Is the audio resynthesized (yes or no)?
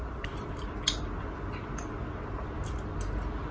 no